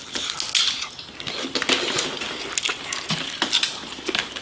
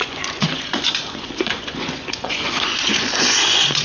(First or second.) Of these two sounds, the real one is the first